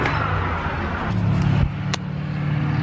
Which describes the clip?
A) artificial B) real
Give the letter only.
B